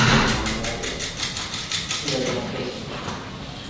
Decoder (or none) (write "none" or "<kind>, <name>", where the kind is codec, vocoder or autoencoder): none